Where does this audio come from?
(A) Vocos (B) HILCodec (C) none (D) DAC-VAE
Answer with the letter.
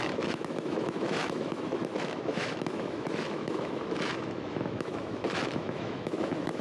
D